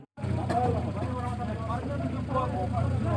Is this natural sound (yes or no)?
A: no